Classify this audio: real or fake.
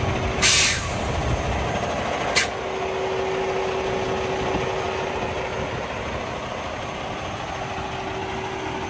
real